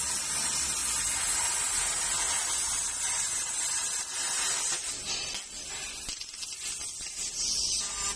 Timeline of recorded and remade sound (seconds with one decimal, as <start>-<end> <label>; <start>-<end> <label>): 0.0-8.2 recorded

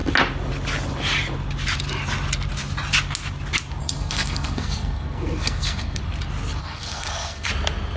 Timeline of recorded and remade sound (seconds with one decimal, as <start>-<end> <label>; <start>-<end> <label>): 0.0-3.8 recorded; 3.8-6.0 remade; 6.0-6.6 recorded; 6.6-7.5 remade; 7.5-8.0 recorded

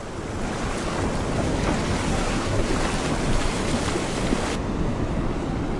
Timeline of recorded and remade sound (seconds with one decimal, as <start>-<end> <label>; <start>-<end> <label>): 0.0-2.1 recorded; 2.1-2.7 remade; 2.7-5.8 recorded

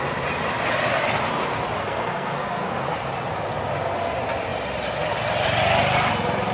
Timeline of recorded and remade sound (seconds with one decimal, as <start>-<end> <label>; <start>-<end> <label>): 0.0-1.8 recorded; 1.8-2.9 remade; 2.9-6.5 recorded

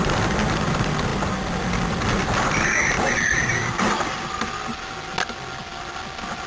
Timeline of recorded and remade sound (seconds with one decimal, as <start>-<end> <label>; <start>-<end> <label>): 0.0-6.5 recorded